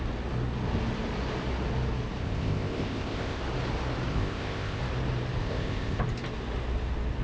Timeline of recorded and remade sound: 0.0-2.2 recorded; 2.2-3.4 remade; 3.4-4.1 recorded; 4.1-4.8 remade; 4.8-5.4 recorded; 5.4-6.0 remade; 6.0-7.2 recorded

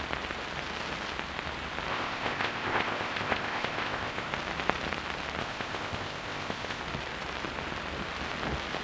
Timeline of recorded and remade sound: 0.0-1.9 recorded; 1.9-4.3 remade; 4.3-5.4 recorded; 5.4-6.8 remade; 6.8-8.8 recorded